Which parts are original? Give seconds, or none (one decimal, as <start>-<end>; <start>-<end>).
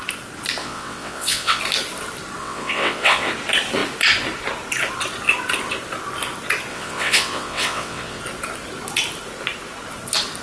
0.0-0.6; 1.6-2.4; 3.3-6.7; 8.2-10.4